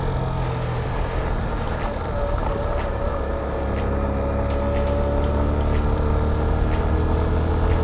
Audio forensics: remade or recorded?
recorded